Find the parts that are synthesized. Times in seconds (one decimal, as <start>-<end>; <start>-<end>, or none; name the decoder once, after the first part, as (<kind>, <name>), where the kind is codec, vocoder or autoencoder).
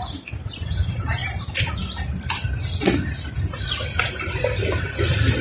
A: none